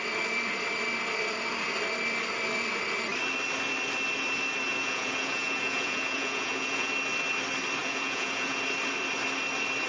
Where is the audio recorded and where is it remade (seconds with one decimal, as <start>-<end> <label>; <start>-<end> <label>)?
0.0-4.7 recorded; 4.7-6.9 remade; 6.9-7.8 recorded; 7.8-8.6 remade; 8.6-9.9 recorded